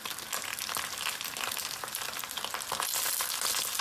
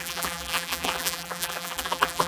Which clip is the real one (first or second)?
first